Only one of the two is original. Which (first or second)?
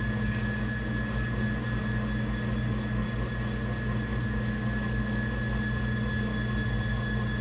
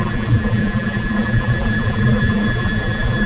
first